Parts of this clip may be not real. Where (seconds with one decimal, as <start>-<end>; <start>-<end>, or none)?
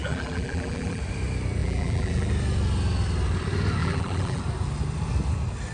0.0-1.0; 1.6-2.3; 3.8-4.4